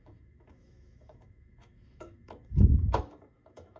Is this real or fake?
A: fake